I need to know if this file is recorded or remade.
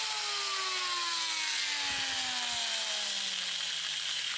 recorded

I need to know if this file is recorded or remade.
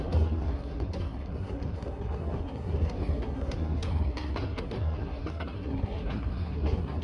remade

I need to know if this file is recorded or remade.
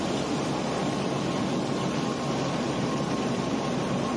recorded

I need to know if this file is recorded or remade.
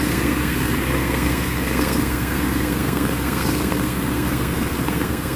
remade